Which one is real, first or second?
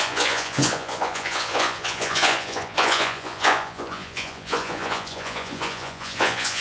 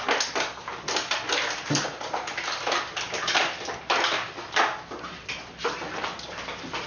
second